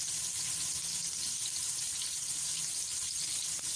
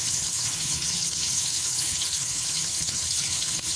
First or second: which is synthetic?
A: second